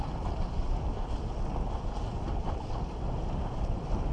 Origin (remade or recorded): recorded